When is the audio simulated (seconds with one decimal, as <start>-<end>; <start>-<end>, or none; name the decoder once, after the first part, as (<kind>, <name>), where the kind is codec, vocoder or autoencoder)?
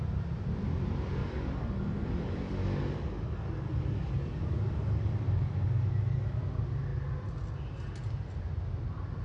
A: 1.2-6.4 (codec, DAC)